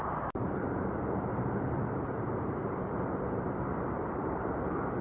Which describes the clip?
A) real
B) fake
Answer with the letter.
B